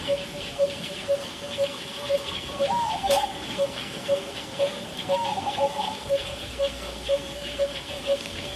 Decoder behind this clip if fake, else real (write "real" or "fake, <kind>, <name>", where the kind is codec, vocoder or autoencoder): fake, codec, SNAC